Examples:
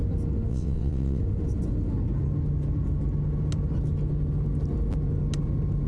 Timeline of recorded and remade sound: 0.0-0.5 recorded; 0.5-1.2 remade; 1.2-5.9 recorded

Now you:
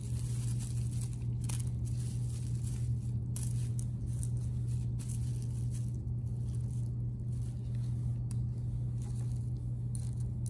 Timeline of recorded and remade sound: 0.0-10.5 recorded

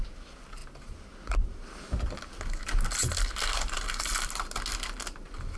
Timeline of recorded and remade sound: 0.0-5.6 recorded

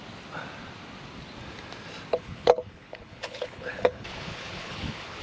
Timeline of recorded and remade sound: 0.0-2.1 recorded; 2.1-5.2 remade

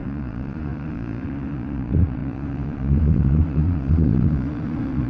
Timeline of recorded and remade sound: 0.0-5.1 remade

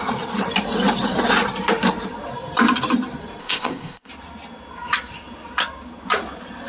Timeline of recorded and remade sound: 0.0-3.4 recorded; 3.4-4.1 remade; 4.1-6.7 recorded